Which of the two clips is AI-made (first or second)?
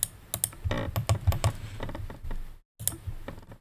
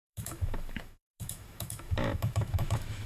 second